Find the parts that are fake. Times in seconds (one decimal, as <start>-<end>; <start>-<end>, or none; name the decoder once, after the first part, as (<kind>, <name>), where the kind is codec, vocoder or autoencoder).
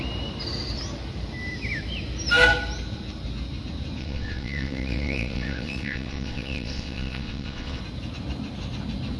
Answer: 4.0-7.8 (vocoder, WaveNeXt)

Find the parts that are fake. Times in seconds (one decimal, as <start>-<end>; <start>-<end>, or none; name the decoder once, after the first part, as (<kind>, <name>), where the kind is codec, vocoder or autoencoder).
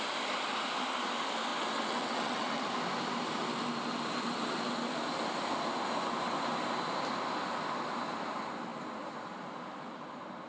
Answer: 1.5-2.6 (vocoder, WaveNeXt)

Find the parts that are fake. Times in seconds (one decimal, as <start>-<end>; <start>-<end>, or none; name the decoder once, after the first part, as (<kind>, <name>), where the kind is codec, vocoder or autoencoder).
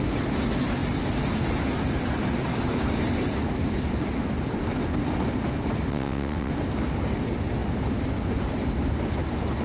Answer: 5.9-6.5 (vocoder, WaveNeXt)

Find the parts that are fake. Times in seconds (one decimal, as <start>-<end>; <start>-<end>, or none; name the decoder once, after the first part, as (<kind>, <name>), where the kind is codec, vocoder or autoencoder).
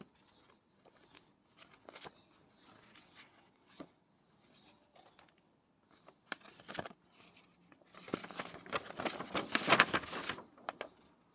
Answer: 3.0-4.1 (vocoder, WaveNeXt)